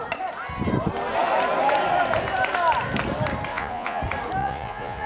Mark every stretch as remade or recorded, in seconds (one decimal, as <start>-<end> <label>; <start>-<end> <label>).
0.0-3.5 recorded; 3.5-4.0 remade; 4.0-4.4 recorded; 4.4-5.1 remade